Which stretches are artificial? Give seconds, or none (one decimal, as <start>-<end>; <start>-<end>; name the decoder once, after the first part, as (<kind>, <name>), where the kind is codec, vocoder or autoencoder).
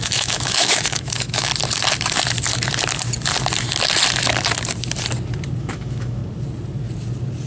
0.0-1.5 (autoencoder, DAC-VAE); 5.6-6.2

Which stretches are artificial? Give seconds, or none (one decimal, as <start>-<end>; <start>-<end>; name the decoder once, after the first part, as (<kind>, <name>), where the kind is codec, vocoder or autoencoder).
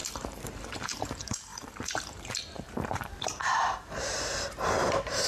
0.7-5.3 (vocoder, BigVGAN v2)